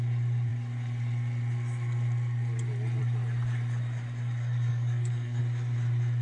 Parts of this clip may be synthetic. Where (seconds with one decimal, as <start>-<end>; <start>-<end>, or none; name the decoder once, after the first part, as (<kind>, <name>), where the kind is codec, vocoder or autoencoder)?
4.7-5.4 (codec, DAC)